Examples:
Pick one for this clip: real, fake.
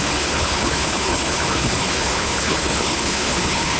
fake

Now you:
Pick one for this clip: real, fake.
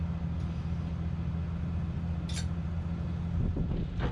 real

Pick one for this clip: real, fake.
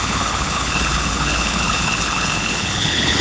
fake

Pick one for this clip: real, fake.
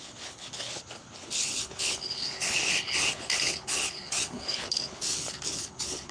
fake